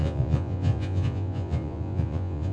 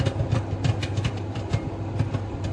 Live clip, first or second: second